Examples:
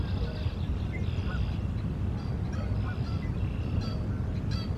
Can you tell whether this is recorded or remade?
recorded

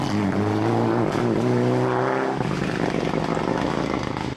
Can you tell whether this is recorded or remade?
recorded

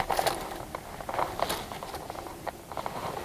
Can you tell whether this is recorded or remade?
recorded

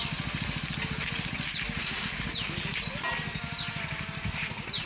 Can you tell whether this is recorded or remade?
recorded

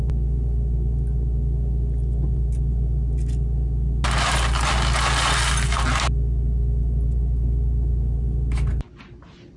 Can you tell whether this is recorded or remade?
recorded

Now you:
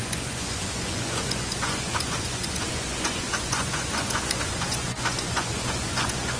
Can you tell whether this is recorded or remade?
remade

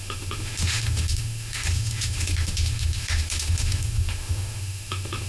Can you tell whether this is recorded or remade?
remade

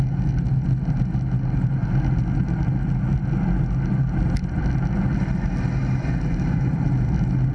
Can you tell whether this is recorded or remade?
recorded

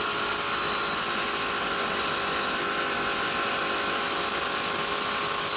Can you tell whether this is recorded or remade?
recorded